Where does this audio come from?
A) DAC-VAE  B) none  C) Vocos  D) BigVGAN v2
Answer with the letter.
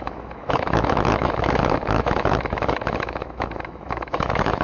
A